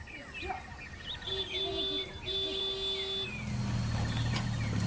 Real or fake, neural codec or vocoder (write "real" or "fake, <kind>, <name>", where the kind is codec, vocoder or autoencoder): real